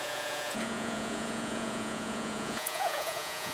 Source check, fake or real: fake